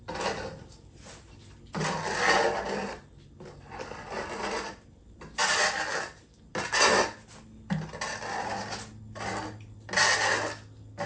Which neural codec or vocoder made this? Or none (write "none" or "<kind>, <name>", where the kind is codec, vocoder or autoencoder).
none